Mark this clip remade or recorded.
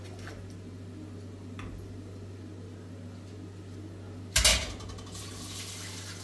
recorded